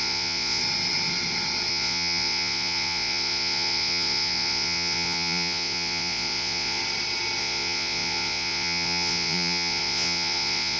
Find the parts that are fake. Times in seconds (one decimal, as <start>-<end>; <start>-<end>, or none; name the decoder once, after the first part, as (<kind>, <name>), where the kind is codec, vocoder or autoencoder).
0.0-0.6 (vocoder, Vocos); 1.7-6.8; 7.4-10.8